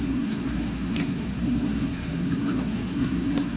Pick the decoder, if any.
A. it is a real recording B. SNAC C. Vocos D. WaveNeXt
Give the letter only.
B